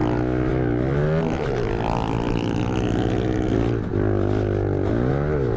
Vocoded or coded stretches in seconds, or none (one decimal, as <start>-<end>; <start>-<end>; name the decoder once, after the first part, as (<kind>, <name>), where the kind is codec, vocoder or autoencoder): none

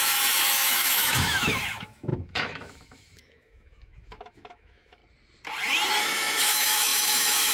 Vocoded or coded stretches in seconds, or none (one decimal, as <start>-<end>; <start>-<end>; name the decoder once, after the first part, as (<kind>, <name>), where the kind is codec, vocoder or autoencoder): 0.0-5.0 (autoencoder, DAC-VAE); 6.0-7.5

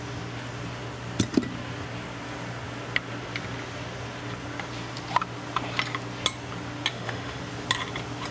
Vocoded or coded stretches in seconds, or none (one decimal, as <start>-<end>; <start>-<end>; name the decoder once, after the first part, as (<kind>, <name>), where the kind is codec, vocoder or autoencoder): 6.9-7.4 (autoencoder, DAC-VAE)

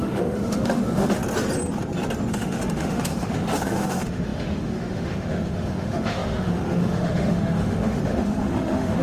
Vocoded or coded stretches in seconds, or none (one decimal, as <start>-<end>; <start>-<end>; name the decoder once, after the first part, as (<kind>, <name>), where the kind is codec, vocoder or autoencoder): 0.0-1.2 (autoencoder, DAC-VAE); 2.3-9.0

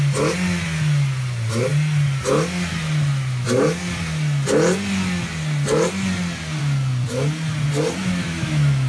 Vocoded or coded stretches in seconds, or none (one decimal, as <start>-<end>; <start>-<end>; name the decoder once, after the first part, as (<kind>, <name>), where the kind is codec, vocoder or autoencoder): 8.0-8.9 (autoencoder, DAC-VAE)

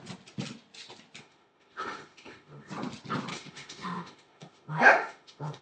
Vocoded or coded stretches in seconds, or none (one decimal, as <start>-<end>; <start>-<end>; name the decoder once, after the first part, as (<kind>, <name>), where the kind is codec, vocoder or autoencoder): 1.2-2.7 (autoencoder, DAC-VAE); 3.3-5.6

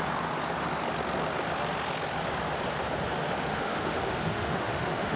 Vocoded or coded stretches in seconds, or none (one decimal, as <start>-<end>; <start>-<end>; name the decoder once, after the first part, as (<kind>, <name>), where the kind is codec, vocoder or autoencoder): 3.5-5.2 (autoencoder, DAC-VAE)

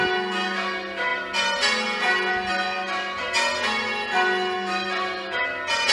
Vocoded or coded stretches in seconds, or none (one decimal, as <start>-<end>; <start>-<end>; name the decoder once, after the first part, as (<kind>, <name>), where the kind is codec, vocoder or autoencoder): none